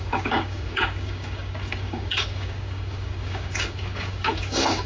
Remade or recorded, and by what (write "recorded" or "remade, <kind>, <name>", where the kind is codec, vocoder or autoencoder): remade, codec, DAC